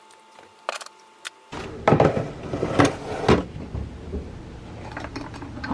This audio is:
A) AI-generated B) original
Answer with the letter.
B